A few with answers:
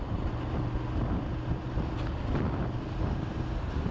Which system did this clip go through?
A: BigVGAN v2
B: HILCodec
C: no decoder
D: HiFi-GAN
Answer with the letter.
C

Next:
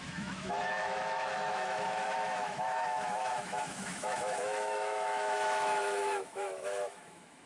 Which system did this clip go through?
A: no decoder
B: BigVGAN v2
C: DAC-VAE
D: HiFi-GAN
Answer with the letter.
C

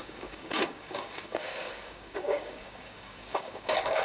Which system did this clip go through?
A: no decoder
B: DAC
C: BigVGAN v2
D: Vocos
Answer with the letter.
B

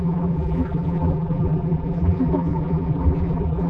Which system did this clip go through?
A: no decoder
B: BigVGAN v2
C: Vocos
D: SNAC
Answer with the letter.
B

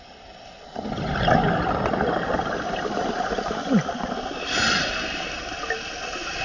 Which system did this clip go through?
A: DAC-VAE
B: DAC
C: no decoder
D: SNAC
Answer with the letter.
C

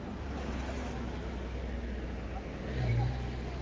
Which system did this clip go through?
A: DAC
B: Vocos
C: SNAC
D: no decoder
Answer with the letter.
D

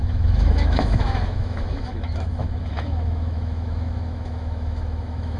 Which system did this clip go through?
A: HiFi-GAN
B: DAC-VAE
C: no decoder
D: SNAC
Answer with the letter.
B